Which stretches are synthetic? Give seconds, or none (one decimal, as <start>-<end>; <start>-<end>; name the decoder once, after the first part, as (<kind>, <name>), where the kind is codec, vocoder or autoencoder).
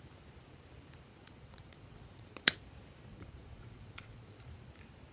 1.1-2.6 (vocoder, Vocos); 3.1-4.4